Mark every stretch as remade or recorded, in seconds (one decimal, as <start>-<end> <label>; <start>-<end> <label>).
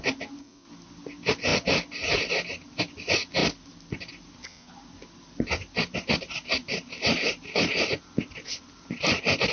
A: 0.0-9.5 recorded